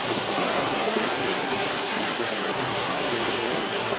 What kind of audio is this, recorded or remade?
remade